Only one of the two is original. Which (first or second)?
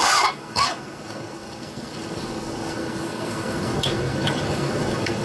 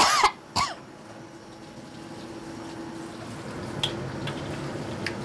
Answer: second